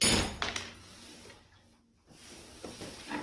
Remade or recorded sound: recorded